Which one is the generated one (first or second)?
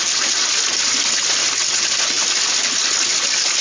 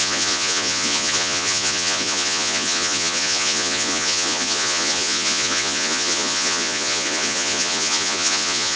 second